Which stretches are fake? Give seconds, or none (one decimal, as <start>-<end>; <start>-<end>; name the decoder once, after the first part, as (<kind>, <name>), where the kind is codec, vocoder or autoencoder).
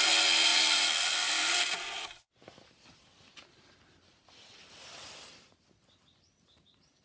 0.0-7.0 (vocoder, BigVGAN v2)